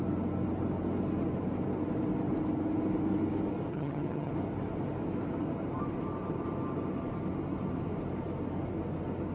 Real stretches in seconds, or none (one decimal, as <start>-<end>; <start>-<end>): 0.0-3.7; 4.3-9.3